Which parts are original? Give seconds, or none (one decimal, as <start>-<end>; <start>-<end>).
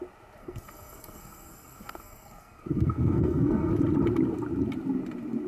0.0-0.4; 3.7-5.5